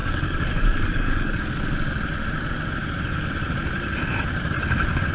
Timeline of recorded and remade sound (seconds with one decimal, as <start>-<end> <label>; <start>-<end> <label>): 0.0-1.6 remade; 1.6-5.1 recorded